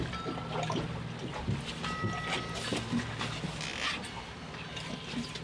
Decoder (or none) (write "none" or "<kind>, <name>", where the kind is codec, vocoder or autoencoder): none